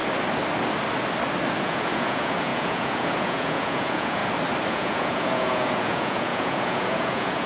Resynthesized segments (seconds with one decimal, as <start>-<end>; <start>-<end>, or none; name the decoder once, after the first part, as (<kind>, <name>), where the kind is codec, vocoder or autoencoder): 1.6-4.2 (vocoder, Vocos); 4.7-7.5